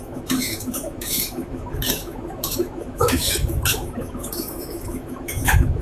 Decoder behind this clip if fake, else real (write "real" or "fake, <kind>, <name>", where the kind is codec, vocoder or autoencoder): fake, autoencoder, DAC-VAE